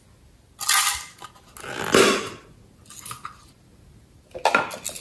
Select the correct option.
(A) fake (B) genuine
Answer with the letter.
B